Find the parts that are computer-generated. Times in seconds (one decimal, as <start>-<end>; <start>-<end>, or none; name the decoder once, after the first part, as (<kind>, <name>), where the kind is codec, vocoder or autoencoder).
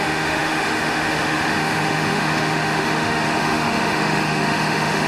0.0-5.1 (autoencoder, DAC-VAE)